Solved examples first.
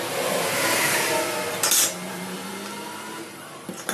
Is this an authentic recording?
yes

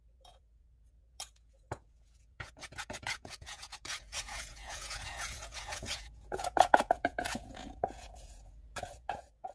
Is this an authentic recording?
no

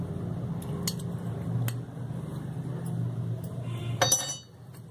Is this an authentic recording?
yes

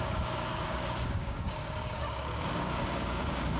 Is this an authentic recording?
no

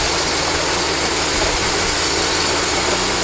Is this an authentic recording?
yes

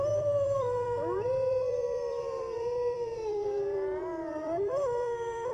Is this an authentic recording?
no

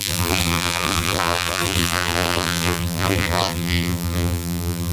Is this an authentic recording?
no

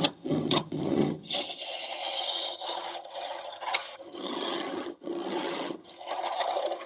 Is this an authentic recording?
no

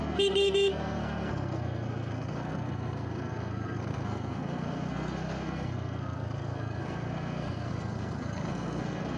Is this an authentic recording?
no